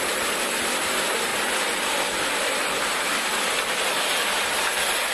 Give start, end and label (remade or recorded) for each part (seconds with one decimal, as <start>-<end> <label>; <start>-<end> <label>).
0.0-5.1 recorded